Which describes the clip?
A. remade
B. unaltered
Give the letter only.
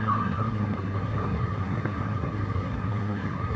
A